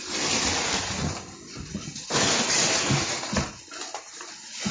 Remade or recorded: recorded